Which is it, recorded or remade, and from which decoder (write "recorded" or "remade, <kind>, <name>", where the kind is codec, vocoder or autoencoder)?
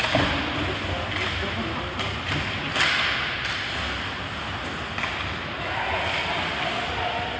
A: recorded